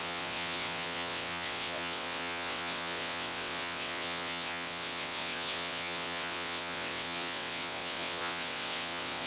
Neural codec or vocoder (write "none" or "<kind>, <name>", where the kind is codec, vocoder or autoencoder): vocoder, WaveNeXt